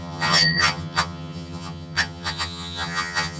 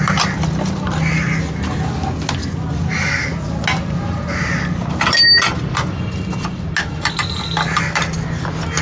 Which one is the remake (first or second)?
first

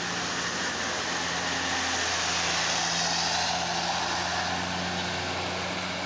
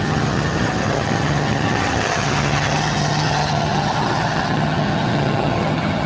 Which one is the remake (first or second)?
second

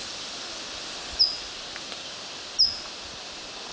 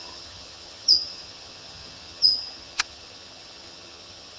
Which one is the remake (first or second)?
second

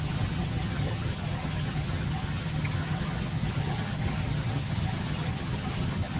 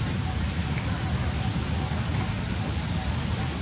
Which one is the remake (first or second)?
first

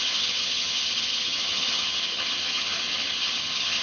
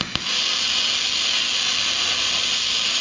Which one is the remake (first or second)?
first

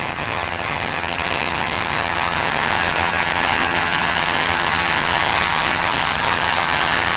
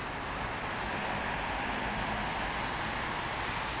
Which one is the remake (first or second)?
first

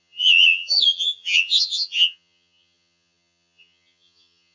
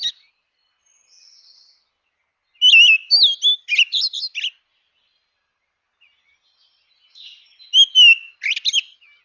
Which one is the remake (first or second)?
first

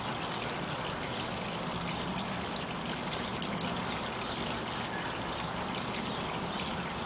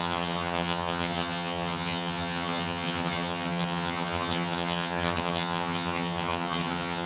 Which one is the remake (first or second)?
second